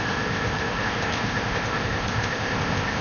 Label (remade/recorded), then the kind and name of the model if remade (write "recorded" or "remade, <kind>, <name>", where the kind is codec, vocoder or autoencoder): remade, codec, ZipCodec